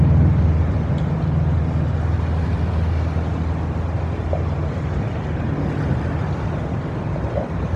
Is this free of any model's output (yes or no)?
yes